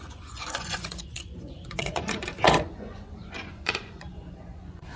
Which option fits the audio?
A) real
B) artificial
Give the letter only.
B